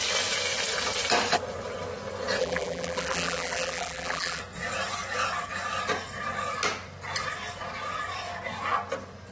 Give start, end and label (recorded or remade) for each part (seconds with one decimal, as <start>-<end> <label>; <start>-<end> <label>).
0.0-2.4 recorded; 2.4-4.4 remade; 4.4-9.3 recorded